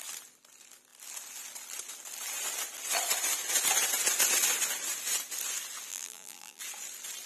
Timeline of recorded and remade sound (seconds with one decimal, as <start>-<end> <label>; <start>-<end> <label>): 0.0-5.9 recorded; 5.9-6.6 remade; 6.6-7.3 recorded